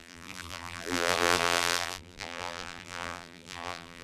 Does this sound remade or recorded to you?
remade